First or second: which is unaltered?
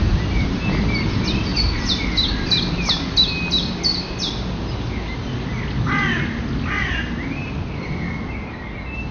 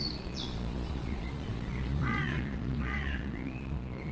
first